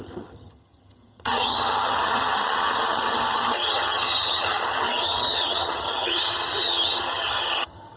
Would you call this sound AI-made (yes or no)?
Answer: yes